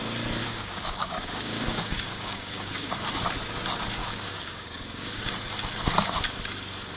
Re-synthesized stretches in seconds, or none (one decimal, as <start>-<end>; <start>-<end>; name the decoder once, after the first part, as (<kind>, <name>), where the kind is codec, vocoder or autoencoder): 0.4-2.9 (codec, DAC); 4.0-5.3